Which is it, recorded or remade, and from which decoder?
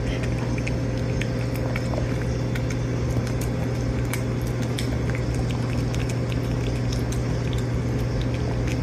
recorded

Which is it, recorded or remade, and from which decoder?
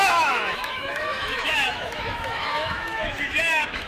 remade, autoencoder, DAC-VAE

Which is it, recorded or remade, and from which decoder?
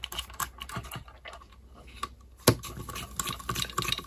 recorded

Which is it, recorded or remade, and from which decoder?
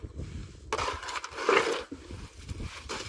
recorded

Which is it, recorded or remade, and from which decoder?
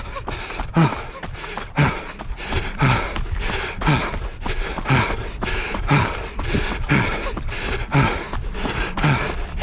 recorded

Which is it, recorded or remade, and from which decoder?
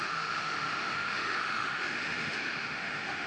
remade, autoencoder, DAC-VAE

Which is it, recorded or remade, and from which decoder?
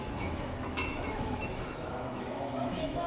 remade, autoencoder, DAC-VAE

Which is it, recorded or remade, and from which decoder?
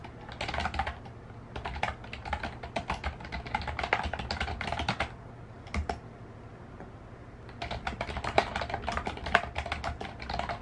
recorded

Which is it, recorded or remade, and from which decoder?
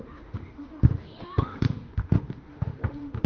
remade, autoencoder, DAC-VAE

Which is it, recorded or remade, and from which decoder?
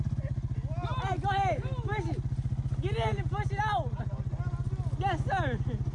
recorded